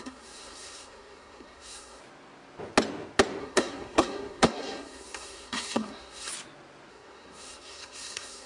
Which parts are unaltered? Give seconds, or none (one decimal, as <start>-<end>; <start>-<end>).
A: 2.0-3.4; 6.3-6.9